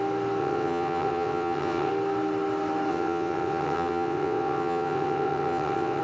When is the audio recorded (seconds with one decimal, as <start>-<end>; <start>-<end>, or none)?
0.0-0.4; 1.9-2.9